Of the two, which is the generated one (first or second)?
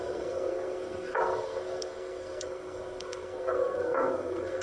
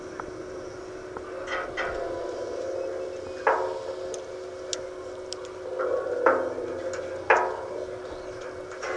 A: first